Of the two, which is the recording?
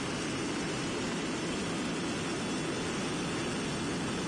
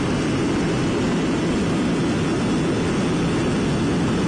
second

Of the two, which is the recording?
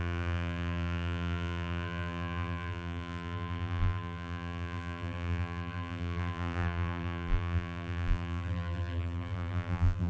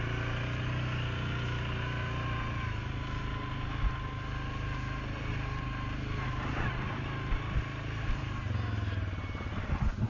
second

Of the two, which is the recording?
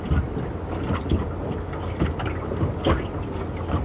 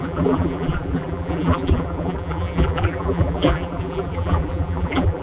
first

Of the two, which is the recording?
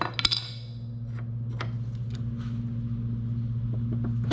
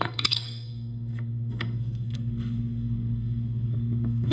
first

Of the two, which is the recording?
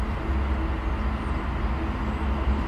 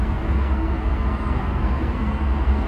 first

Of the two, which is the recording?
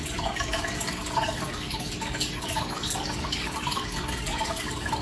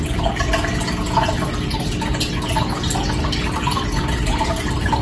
second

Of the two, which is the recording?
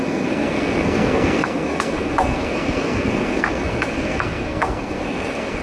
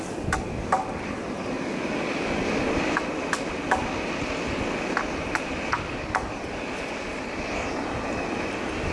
second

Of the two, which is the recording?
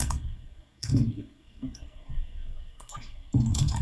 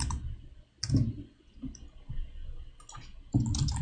second